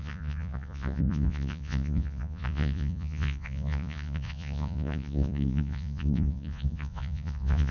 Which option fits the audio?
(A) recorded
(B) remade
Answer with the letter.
B